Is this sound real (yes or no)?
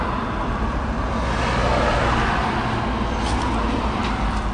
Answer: yes